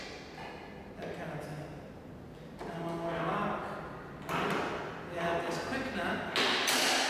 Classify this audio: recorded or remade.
recorded